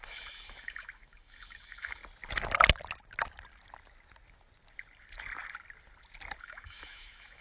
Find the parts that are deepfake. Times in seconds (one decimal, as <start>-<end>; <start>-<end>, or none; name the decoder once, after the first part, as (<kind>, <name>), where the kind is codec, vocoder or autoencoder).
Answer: 0.0-2.0 (autoencoder, DAC-VAE); 6.4-7.4